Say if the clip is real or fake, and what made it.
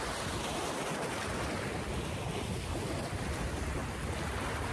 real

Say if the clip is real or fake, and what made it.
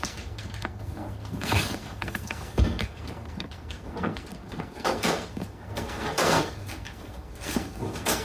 fake, codec, SNAC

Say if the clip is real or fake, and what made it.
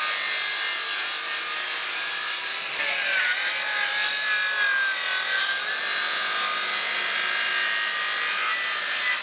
real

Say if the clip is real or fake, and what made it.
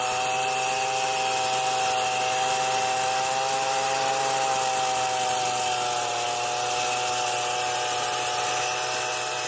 real